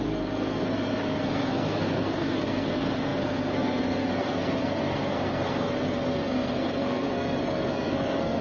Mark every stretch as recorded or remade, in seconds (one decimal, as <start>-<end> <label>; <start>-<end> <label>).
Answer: 0.0-8.4 remade